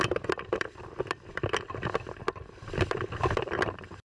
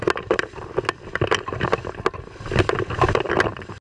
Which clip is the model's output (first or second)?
first